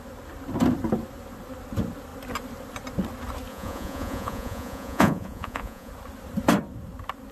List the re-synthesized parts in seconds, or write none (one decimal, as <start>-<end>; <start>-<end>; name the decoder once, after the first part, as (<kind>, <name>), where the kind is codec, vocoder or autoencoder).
3.5-5.9 (vocoder, Vocos)